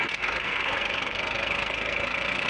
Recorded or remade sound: remade